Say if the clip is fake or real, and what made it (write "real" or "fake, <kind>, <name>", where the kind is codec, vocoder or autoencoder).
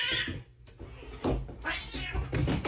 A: real